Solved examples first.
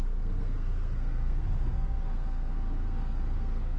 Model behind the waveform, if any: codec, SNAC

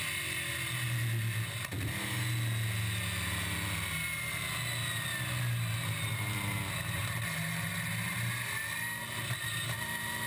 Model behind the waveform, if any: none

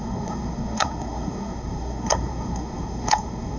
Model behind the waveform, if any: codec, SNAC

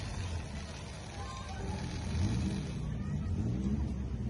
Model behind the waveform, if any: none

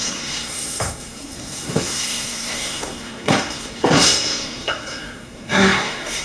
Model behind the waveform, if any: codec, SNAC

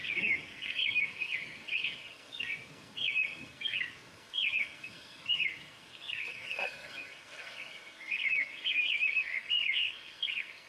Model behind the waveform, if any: codec, SNAC